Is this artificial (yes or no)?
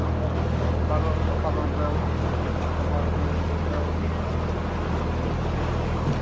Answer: no